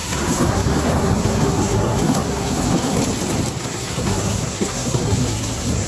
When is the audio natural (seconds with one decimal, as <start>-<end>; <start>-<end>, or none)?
3.0-3.6